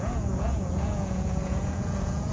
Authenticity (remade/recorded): remade